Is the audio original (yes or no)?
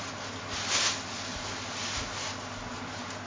yes